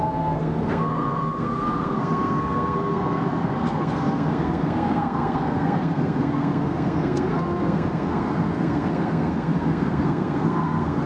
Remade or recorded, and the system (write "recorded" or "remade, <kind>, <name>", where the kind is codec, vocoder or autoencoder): remade, codec, SNAC